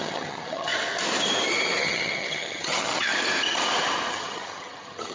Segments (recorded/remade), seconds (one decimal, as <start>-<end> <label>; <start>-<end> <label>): 0.0-0.7 remade; 0.7-1.8 recorded; 1.8-3.1 remade; 3.1-4.1 recorded; 4.1-5.1 remade